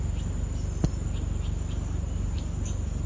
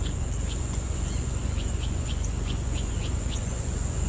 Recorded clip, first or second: first